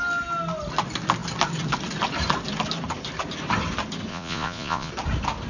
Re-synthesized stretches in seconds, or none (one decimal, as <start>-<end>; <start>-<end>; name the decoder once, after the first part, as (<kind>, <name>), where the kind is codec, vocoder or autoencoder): 4.1-4.9 (vocoder, Vocos)